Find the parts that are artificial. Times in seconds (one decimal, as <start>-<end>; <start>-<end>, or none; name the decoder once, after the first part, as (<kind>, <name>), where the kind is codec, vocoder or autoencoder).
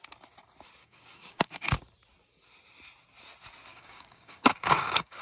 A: 0.8-1.8 (codec, DAC); 3.7-5.2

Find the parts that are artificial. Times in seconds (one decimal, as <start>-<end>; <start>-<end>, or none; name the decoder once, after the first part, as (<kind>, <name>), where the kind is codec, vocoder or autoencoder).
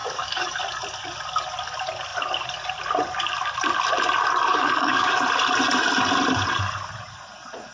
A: 0.0-0.6 (codec, DAC); 4.5-5.2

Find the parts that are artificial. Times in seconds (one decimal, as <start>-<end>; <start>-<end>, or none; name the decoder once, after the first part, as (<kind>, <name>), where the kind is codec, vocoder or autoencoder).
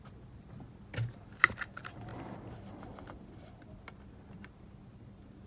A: none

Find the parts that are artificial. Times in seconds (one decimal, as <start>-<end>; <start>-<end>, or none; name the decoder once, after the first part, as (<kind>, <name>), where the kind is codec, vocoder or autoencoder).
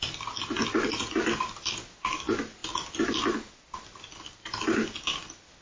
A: none